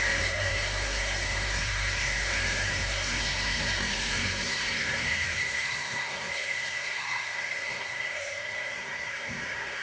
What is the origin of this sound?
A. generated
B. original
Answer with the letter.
A